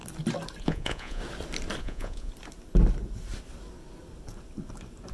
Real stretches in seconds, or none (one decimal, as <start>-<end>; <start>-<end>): 0.0-0.6; 1.2-1.8; 2.3-5.1